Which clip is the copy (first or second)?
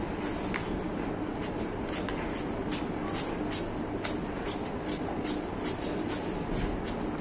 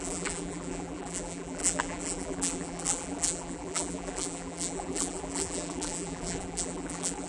second